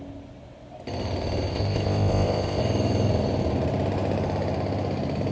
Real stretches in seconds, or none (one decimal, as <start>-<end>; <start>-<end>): 0.0-1.5; 2.6-5.3

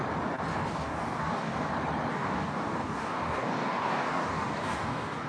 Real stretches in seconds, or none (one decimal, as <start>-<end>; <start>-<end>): 0.0-0.5; 1.7-2.1